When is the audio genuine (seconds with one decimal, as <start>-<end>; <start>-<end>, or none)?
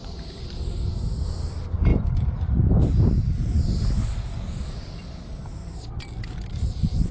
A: 0.0-7.1